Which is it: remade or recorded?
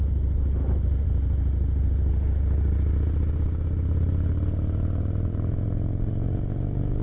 recorded